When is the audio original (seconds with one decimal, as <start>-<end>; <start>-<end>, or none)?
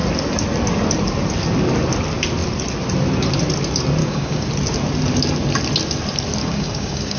0.0-4.0; 4.5-6.4